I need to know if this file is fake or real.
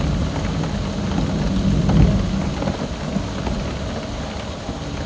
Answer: real